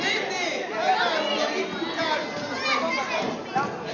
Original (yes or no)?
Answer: yes